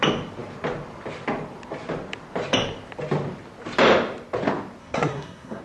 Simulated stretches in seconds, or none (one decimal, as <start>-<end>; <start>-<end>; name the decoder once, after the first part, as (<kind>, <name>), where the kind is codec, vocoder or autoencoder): 4.8-5.6 (codec, SNAC)